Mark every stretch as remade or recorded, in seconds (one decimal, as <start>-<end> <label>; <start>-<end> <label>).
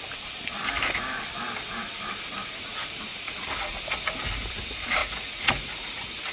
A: 0.0-3.1 recorded; 3.1-3.8 remade; 3.8-5.0 recorded; 5.0-6.3 remade